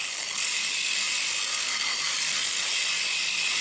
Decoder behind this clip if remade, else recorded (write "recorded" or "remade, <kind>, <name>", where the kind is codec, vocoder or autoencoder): recorded